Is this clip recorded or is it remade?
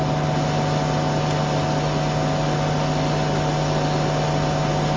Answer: recorded